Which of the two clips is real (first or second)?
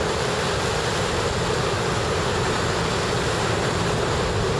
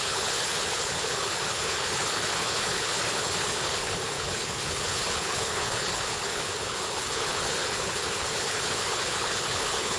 first